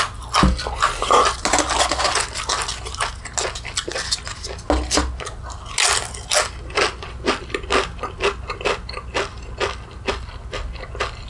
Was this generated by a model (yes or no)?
no